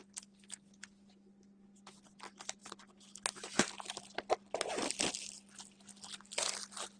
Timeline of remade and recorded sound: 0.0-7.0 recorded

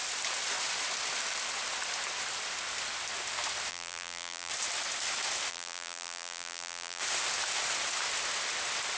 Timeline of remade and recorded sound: 0.0-3.7 recorded; 3.7-4.5 remade; 4.5-5.5 recorded; 5.5-7.0 remade; 7.0-9.0 recorded

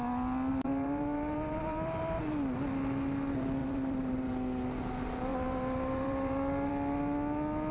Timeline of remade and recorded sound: 0.0-0.5 recorded; 0.5-2.2 remade; 2.2-3.6 recorded; 3.6-4.3 remade; 4.3-5.3 recorded; 5.3-6.7 remade; 6.7-7.7 recorded

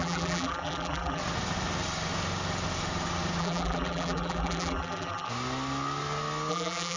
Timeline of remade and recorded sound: 0.0-1.2 remade; 1.2-3.4 recorded; 3.4-5.3 remade; 5.3-6.5 recorded; 6.5-7.0 remade